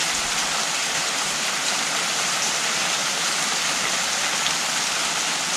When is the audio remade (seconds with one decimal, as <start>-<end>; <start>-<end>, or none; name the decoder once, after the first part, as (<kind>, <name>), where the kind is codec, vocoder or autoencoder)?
0.8-1.8 (vocoder, BigVGAN v2); 3.0-3.6